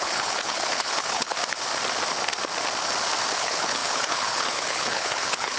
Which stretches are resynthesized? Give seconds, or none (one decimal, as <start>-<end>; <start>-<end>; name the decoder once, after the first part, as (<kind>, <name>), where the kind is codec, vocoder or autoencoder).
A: 0.0-1.4 (codec, HILCodec); 3.4-5.6